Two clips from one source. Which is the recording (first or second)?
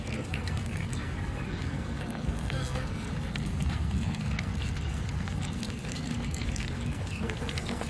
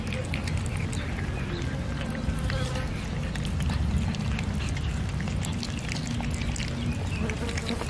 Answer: second